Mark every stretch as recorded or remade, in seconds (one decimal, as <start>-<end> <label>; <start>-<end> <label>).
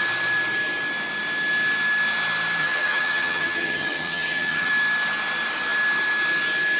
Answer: 0.0-2.6 recorded; 2.6-4.7 remade; 4.7-6.8 recorded